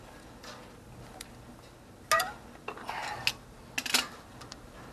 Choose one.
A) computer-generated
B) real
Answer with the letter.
B